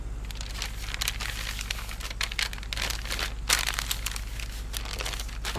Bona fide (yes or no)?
yes